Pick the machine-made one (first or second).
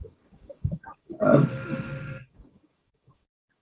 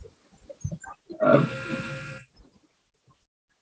first